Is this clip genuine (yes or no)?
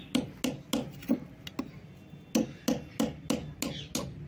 yes